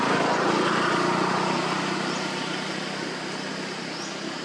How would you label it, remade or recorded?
recorded